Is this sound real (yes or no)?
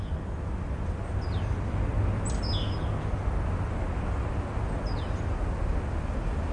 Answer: yes